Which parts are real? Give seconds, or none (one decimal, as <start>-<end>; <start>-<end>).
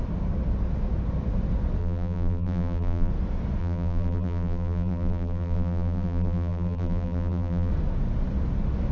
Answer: 0.0-1.8; 3.1-3.6; 7.7-8.9